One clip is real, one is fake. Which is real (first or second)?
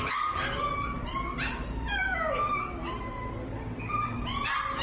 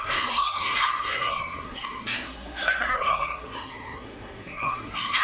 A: first